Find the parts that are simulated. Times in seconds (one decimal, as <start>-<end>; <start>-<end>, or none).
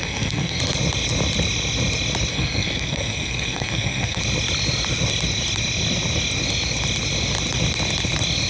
0.0-0.6; 2.3-4.2